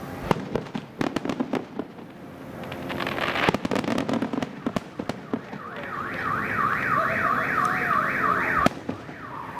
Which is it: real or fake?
real